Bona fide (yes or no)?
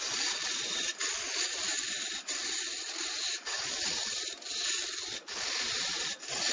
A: yes